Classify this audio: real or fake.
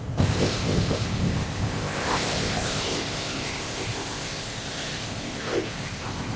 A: fake